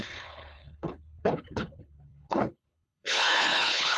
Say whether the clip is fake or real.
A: fake